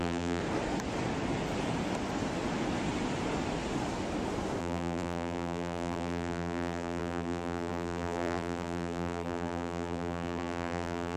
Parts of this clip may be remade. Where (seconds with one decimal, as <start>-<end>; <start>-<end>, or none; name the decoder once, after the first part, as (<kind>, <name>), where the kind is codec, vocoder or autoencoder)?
0.0-0.4 (vocoder, BigVGAN v2); 4.6-11.2